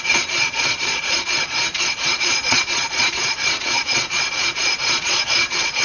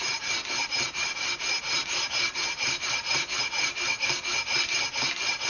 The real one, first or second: second